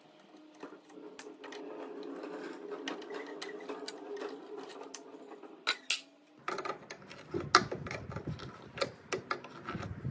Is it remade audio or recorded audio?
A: recorded